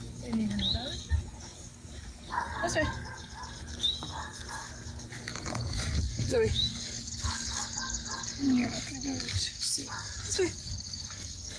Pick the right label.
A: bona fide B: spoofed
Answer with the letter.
B